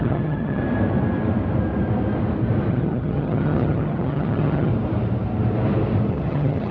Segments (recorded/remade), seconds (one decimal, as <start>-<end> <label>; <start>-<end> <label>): 0.0-0.6 remade; 0.6-2.7 recorded; 2.7-4.7 remade; 4.7-6.1 recorded; 6.1-6.7 remade